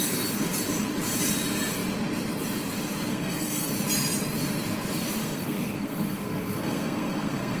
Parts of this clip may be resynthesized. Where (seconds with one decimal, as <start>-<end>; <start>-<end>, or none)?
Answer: 3.1-3.7; 5.2-7.6